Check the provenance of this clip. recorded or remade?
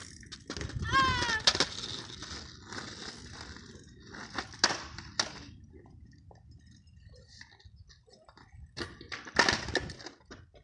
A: recorded